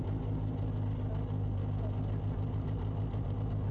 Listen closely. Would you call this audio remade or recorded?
recorded